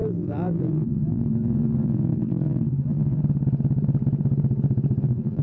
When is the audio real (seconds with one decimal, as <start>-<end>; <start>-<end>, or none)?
3.2-5.0